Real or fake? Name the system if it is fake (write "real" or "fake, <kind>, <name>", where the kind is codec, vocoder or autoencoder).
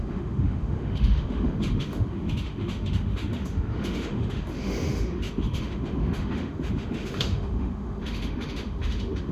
fake, autoencoder, DAC-VAE